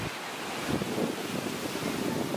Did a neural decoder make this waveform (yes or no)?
no